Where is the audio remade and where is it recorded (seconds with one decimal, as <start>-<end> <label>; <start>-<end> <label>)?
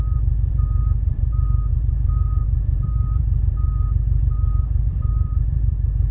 0.0-6.1 remade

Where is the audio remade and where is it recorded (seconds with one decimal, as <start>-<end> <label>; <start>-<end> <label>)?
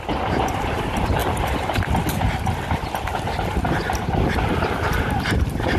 0.0-5.8 recorded